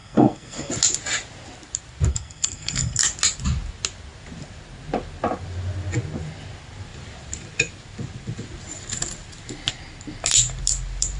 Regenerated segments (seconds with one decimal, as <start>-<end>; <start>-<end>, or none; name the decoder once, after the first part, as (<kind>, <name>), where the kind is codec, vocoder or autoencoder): 0.0-0.7 (codec, SNAC); 2.1-3.0